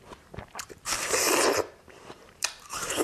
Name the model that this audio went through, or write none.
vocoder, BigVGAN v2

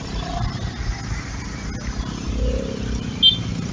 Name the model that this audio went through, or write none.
none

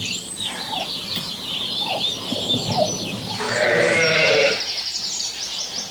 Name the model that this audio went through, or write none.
none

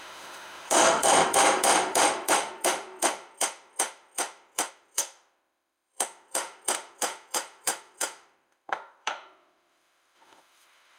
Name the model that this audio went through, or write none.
autoencoder, DAC-VAE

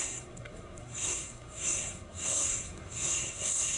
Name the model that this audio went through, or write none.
codec, SNAC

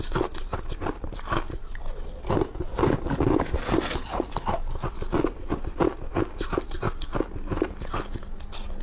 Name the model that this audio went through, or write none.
none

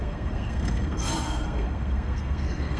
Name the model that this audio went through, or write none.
codec, SNAC